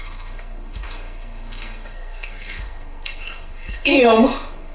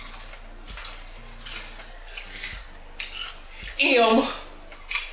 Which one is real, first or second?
second